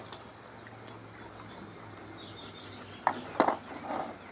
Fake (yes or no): no